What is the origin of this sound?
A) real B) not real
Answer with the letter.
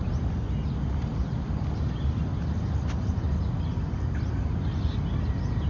A